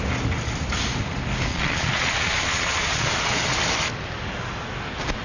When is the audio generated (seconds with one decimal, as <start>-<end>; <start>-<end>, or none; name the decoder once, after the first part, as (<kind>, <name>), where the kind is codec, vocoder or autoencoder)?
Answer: 1.5-3.1 (vocoder, Vocos)